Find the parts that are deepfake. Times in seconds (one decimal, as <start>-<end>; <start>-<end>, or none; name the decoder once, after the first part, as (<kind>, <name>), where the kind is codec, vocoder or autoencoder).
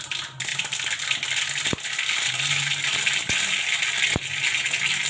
none